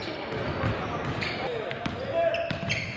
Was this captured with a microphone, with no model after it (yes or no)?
yes